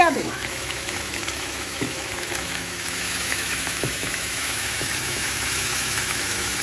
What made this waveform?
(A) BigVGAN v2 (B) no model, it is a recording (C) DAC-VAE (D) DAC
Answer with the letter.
C